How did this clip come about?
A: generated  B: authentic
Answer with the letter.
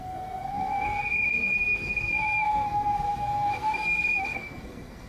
A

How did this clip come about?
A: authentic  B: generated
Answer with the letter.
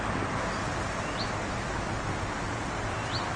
A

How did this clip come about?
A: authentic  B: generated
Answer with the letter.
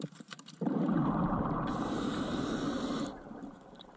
B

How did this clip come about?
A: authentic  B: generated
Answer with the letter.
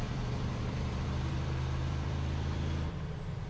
B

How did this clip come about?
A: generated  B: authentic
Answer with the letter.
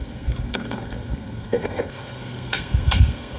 A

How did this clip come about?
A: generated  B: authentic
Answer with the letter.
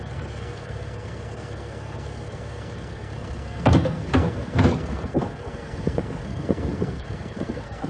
A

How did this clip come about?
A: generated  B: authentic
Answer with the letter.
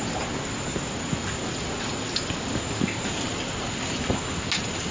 B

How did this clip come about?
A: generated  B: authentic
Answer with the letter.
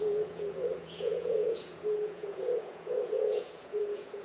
A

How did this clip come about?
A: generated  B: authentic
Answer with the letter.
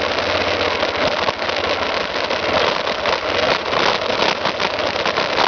B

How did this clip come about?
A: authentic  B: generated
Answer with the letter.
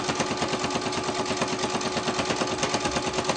A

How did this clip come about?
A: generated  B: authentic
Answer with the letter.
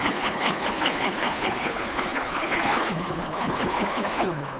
A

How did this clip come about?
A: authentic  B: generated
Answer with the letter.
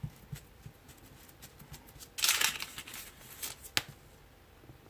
A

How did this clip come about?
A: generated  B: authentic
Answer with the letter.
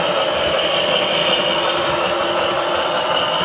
B